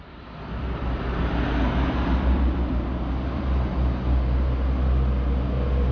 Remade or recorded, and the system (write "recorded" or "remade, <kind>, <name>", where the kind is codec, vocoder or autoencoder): recorded